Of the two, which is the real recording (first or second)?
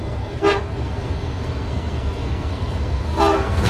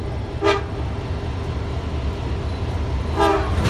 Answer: second